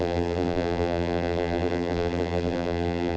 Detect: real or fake fake